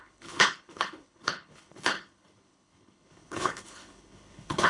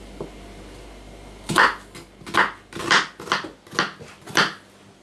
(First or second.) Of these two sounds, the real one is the second